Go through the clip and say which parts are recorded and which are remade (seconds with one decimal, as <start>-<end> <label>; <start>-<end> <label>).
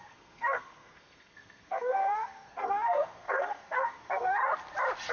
0.0-4.4 remade; 4.4-5.1 recorded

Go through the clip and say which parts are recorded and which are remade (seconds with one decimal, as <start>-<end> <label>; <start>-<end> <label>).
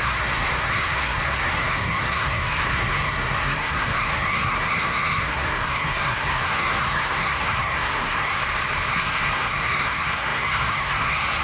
0.0-8.4 remade; 8.4-8.9 recorded; 8.9-11.4 remade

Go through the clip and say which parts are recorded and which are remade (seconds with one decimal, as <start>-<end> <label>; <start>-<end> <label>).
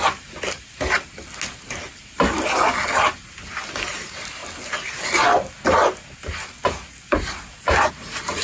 0.0-3.9 recorded; 3.9-4.4 remade; 4.4-7.9 recorded; 7.9-8.4 remade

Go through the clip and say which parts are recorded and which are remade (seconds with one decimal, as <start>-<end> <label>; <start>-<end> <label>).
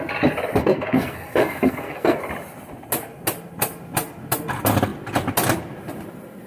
0.0-0.6 recorded; 0.6-2.2 remade; 2.2-6.5 recorded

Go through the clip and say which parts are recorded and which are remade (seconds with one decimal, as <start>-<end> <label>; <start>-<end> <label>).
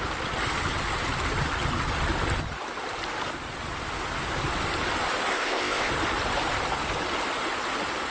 0.0-5.3 recorded; 5.3-5.9 remade; 5.9-8.1 recorded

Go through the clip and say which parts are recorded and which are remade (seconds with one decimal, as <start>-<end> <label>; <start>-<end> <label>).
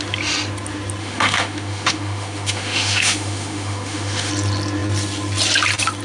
0.0-1.0 recorded; 1.0-4.3 remade; 4.3-6.0 recorded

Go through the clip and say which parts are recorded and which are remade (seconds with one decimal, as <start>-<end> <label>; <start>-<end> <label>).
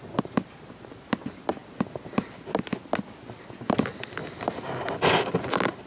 0.0-5.9 recorded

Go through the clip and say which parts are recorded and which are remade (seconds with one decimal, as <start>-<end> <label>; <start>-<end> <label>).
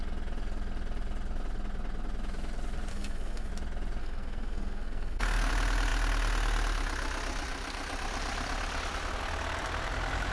0.0-2.9 recorded; 2.9-3.5 remade; 3.5-4.0 recorded; 4.0-5.5 remade; 5.5-10.3 recorded